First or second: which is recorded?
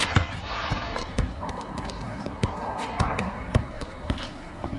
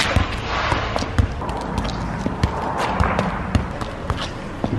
second